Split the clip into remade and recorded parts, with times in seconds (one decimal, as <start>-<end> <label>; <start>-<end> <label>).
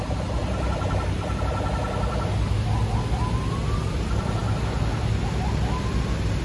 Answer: 0.0-6.4 recorded